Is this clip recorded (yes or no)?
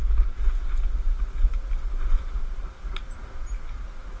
yes